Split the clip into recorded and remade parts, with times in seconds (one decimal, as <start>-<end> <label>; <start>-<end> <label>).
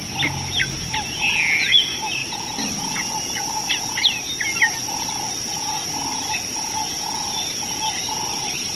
0.0-2.2 recorded; 2.2-2.8 remade; 2.8-8.8 recorded